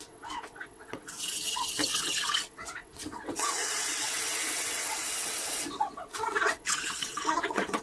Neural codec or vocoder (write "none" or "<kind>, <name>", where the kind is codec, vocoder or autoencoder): vocoder, WaveNeXt